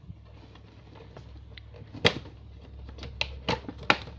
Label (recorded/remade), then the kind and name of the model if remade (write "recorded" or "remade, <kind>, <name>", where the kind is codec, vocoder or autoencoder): recorded